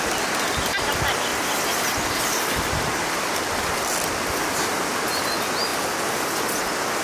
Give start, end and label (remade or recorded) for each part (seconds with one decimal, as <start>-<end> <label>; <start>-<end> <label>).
0.0-1.3 recorded; 1.3-5.2 remade; 5.2-7.0 recorded